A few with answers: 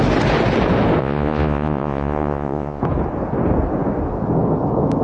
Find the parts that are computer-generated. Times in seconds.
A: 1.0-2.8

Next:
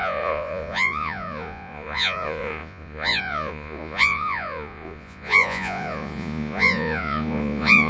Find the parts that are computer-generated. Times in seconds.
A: 0.0-7.9

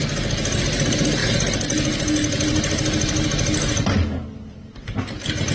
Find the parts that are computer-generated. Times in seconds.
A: none